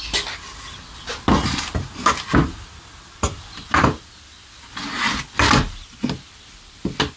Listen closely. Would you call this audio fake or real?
real